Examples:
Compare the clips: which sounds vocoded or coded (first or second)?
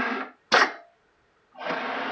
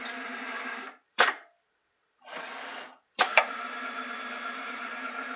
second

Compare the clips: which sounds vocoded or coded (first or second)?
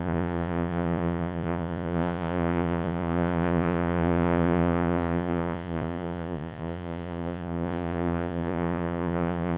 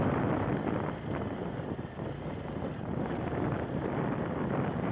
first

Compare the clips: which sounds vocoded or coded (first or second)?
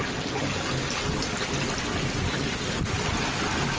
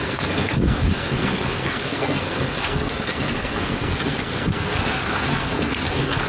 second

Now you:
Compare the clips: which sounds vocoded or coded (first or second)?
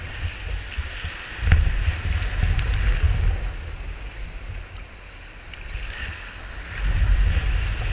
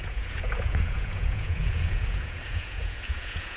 second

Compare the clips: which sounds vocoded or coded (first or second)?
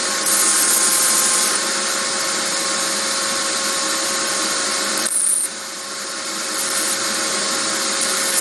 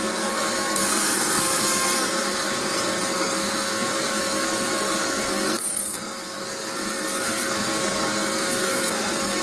second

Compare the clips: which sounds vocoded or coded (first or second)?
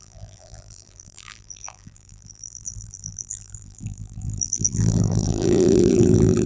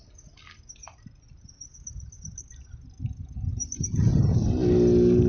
first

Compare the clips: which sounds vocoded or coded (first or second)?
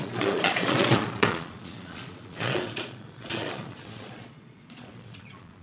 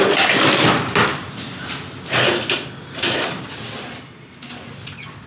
first